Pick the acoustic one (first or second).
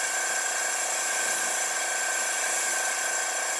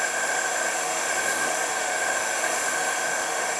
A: first